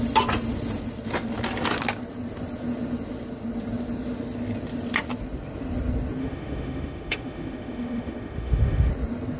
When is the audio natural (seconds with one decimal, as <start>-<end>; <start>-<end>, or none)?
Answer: 0.0-6.2; 8.9-9.4